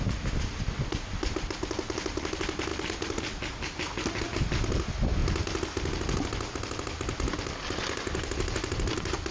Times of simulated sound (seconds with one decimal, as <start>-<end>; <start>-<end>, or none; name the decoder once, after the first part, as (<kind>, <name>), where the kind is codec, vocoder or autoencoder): none